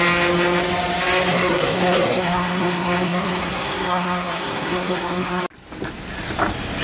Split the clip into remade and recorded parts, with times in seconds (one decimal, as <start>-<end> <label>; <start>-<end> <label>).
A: 0.0-1.3 recorded; 1.3-5.4 remade; 5.4-6.8 recorded